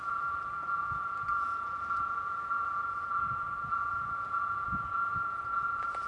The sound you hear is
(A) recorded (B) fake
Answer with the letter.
B